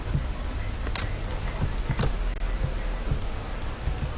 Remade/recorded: recorded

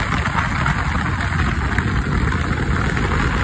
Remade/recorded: recorded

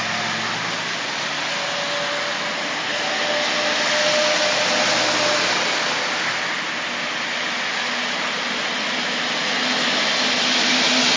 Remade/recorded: recorded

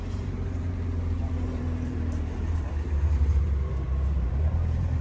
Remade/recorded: remade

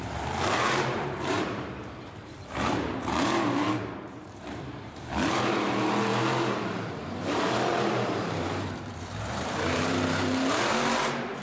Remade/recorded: remade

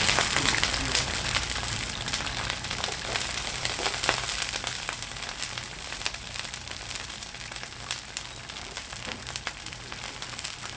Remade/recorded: remade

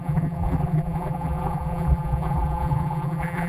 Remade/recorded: remade